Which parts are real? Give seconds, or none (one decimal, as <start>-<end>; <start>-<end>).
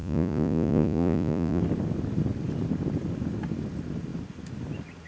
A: 1.6-5.1